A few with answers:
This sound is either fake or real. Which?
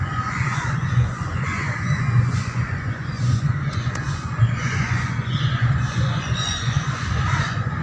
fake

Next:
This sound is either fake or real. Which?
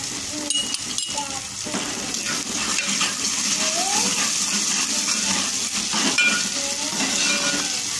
real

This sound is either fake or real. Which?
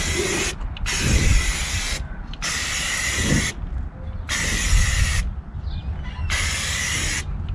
real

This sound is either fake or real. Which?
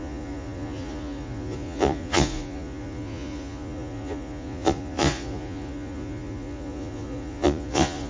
fake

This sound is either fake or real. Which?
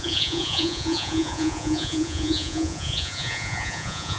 fake